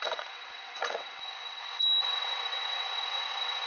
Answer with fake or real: fake